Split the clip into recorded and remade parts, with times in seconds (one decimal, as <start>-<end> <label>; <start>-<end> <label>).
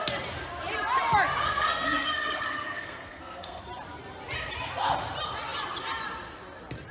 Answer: 0.0-1.4 recorded; 1.4-3.6 remade; 3.6-6.9 recorded